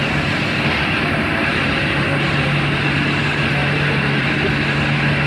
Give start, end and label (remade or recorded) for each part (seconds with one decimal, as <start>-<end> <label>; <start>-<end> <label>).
0.0-1.5 remade; 1.5-3.6 recorded; 3.6-4.5 remade; 4.5-5.3 recorded